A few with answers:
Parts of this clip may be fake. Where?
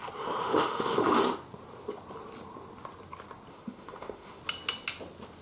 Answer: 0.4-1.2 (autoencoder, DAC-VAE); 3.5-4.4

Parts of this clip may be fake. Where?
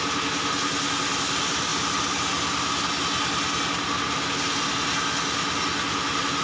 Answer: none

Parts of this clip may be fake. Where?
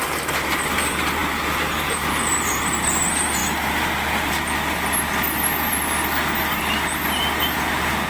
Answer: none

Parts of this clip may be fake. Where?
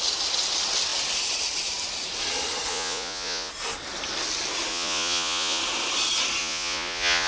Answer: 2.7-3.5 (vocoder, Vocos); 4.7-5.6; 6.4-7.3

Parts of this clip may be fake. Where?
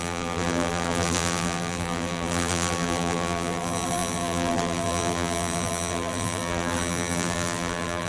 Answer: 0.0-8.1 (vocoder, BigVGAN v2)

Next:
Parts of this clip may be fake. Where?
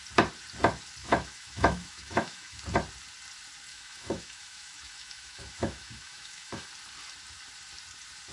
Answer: 1.0-2.6 (autoencoder, DAC-VAE); 3.7-6.7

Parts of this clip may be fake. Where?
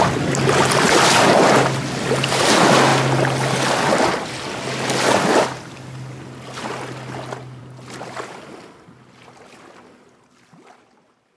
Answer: none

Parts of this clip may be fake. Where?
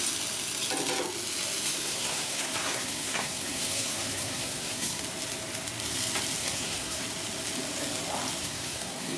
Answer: 1.7-5.0 (codec, SNAC); 6.4-7.0; 8.4-9.2